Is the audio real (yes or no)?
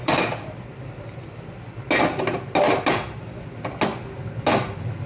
yes